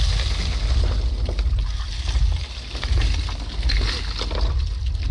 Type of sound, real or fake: real